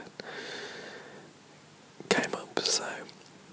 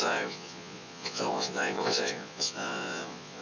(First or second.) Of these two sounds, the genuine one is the first